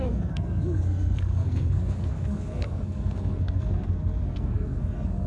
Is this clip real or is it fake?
fake